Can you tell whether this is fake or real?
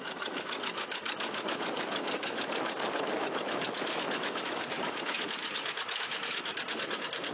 fake